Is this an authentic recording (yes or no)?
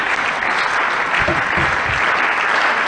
yes